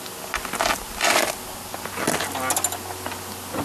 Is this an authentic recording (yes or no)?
yes